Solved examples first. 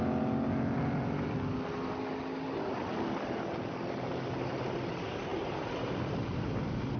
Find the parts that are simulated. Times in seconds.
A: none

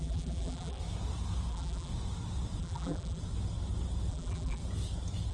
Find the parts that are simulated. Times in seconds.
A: 0.0-0.8 (vocoder, BigVGAN v2); 1.5-1.9; 2.6-3.2; 4.1-4.6

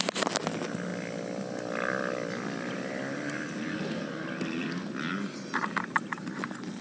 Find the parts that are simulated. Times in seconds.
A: 5.1-6.8 (vocoder, BigVGAN v2)

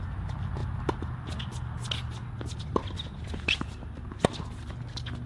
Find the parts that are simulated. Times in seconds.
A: none